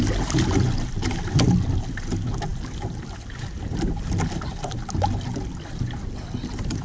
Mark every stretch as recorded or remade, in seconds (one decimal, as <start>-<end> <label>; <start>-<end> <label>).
0.0-6.8 recorded